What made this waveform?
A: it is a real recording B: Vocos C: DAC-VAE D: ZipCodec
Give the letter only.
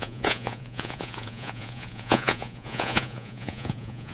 B